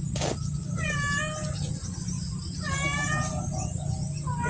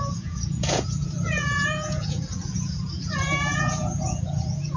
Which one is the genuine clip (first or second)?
first